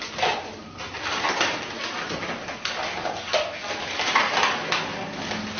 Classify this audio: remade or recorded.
recorded